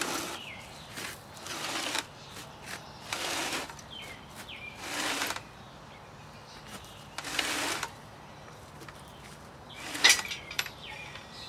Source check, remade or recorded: remade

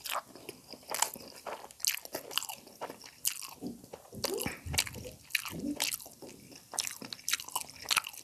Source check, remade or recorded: recorded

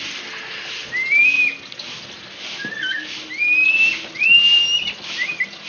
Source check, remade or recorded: recorded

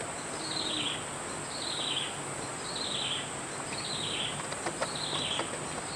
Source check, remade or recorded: recorded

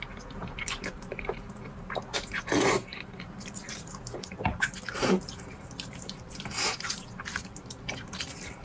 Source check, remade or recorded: remade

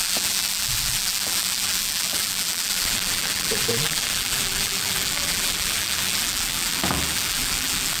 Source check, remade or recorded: remade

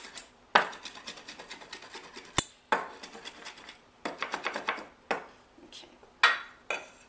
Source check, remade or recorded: recorded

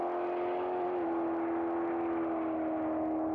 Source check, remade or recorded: recorded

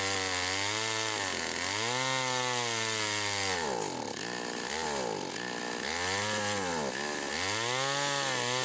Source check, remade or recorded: recorded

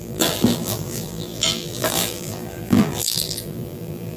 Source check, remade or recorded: remade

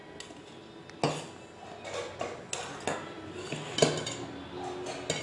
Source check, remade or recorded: recorded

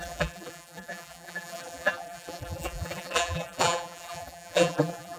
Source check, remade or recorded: remade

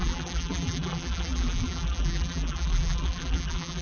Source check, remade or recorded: remade